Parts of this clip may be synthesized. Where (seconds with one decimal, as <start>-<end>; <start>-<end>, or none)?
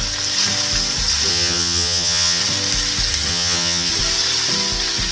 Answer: 1.3-2.4; 3.3-3.9